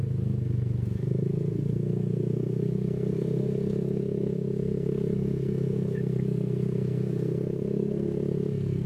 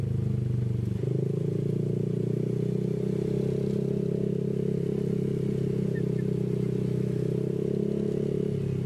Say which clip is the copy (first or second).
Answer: first